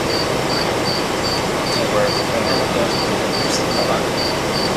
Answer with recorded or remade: remade